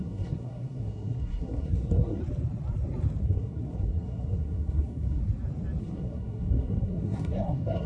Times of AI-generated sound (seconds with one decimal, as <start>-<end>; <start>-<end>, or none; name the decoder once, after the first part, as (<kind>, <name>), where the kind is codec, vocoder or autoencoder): 0.0-2.2 (codec, SNAC); 3.2-5.2; 5.8-7.9